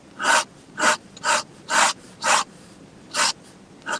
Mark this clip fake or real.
fake